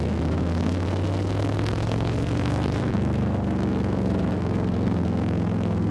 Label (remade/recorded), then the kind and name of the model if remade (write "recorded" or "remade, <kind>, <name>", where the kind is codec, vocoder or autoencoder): remade, codec, SNAC